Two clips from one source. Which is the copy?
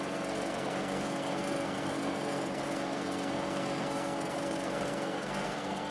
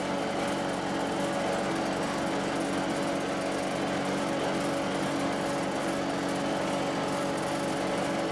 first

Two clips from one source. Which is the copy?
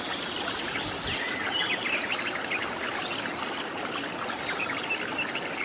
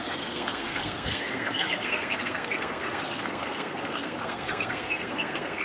second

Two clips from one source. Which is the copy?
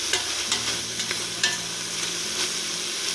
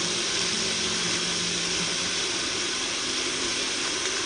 second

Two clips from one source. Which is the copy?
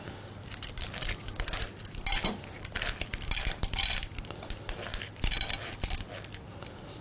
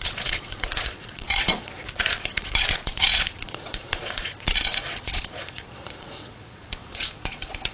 second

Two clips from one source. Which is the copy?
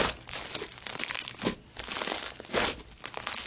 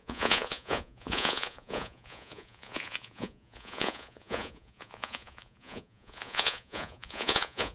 second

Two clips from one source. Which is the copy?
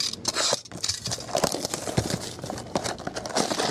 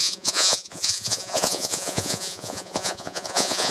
second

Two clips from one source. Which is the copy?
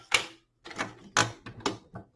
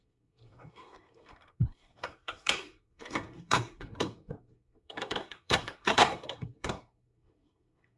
second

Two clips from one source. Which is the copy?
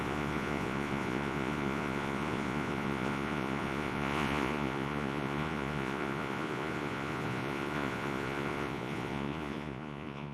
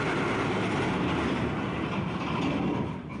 first